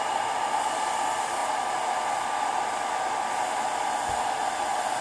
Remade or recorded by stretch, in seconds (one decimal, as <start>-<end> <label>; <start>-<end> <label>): 0.0-5.0 recorded